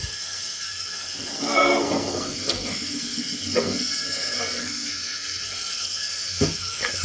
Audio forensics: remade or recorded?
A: remade